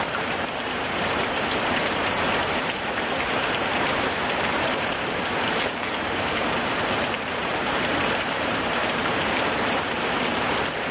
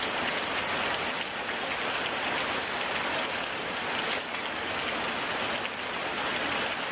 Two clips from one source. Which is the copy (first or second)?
first